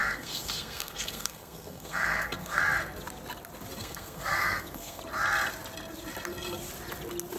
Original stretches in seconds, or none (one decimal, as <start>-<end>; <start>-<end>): 2.6-3.8; 5.0-7.4